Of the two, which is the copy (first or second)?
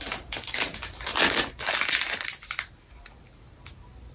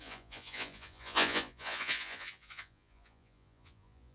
second